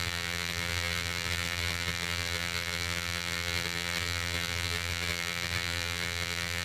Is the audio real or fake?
fake